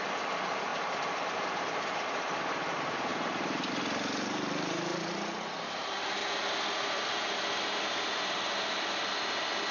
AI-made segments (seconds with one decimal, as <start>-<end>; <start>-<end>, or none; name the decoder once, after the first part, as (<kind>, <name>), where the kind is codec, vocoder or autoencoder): 0.7-1.6 (vocoder, BigVGAN v2); 3.1-3.7; 4.9-5.6